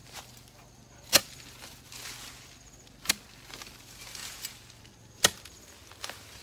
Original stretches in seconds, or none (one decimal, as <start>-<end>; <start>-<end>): 0.0-6.4